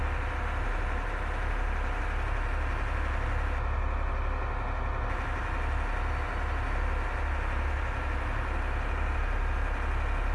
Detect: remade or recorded recorded